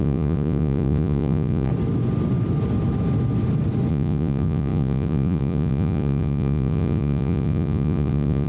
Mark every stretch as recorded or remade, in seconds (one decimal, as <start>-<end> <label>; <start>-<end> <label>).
0.0-1.7 remade; 1.7-3.9 recorded; 3.9-8.5 remade